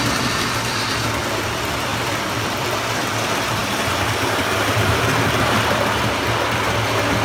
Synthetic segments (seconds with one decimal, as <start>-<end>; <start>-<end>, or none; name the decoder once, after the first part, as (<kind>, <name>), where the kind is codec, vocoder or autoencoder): 1.9-3.1 (vocoder, BigVGAN v2); 3.6-5.6